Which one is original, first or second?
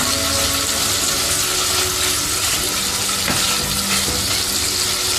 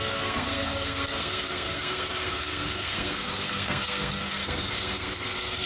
first